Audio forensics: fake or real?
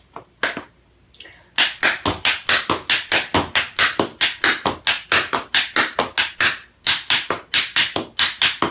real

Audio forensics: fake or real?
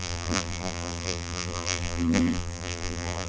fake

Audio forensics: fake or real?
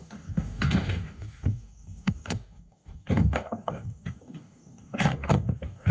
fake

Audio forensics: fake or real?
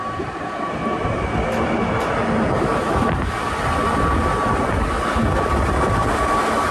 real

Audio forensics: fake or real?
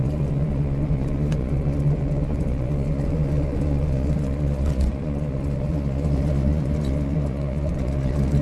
fake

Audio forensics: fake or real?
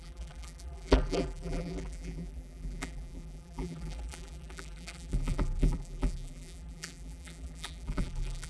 fake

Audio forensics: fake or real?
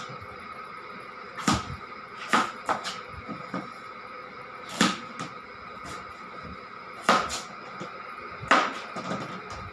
real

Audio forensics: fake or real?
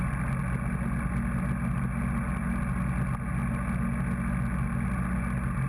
real